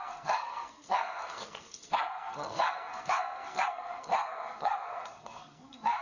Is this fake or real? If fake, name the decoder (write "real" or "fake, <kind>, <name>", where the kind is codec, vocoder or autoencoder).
fake, codec, SNAC